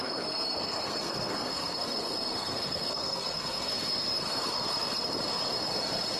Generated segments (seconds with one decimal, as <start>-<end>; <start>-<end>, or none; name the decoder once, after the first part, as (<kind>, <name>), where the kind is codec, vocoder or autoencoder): 0.0-3.7 (codec, SNAC)